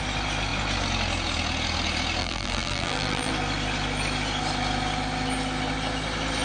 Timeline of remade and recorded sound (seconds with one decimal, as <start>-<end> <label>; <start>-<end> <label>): 0.0-2.2 recorded; 2.2-3.3 remade; 3.3-6.4 recorded